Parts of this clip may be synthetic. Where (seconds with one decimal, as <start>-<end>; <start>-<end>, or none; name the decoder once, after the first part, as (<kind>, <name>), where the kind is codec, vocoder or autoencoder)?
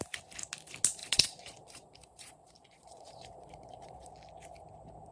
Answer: 1.0-4.1 (vocoder, Vocos)